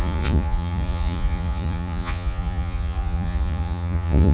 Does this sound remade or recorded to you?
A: remade